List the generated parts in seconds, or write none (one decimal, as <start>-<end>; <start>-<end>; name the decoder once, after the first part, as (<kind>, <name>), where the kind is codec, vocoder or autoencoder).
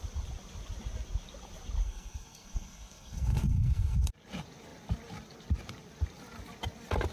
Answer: 1.8-4.1 (codec, SNAC)